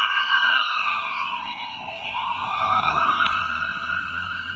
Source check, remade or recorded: remade